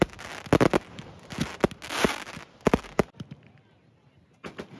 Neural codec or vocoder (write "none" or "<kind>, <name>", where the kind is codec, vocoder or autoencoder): none